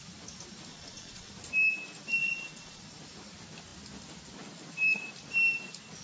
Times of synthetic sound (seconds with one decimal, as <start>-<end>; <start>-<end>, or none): 0.7-1.3; 2.2-2.8